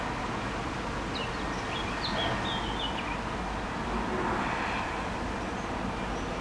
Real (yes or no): yes